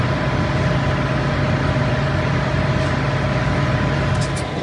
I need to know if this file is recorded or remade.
recorded